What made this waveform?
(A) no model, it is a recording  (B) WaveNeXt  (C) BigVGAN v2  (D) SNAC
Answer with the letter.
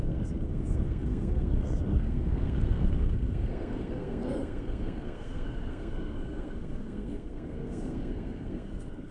D